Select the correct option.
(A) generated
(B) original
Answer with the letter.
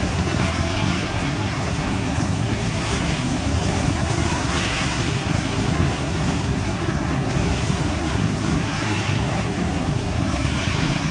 A